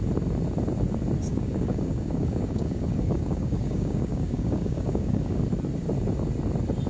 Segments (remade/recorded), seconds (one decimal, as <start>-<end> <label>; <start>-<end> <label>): 0.0-1.3 recorded; 1.3-5.4 remade; 5.4-6.9 recorded